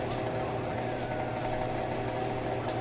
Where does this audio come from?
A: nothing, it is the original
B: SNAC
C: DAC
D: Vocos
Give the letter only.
A